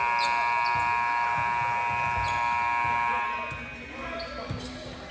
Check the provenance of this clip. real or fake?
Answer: real